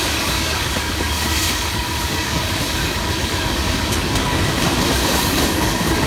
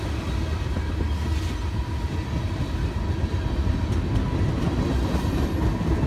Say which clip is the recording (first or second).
second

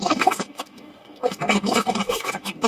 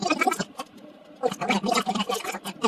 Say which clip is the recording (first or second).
second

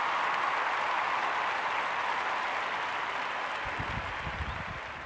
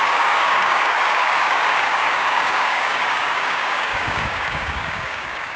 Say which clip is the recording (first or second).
first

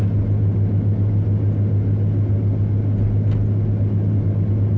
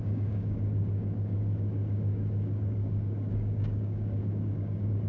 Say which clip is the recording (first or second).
first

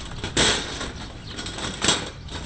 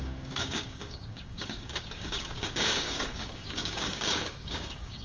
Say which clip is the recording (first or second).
first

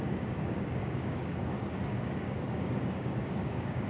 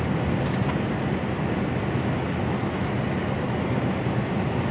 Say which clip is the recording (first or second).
second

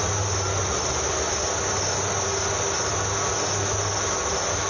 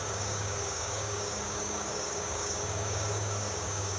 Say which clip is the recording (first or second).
first